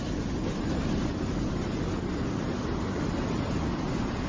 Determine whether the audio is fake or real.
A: real